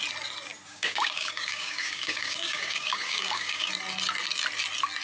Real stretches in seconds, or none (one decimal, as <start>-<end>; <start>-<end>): 0.0-0.7; 3.7-5.0